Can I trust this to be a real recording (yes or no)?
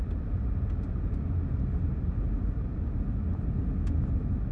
yes